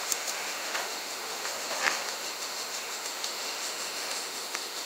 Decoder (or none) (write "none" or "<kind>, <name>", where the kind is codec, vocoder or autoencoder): autoencoder, DAC-VAE